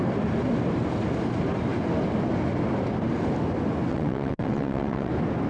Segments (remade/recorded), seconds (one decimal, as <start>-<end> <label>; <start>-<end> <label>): 0.0-3.9 recorded; 3.9-5.1 remade; 5.1-5.5 recorded